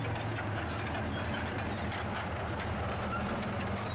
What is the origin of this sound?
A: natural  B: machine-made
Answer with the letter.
A